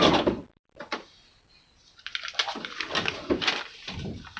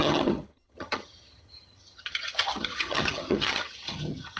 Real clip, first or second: first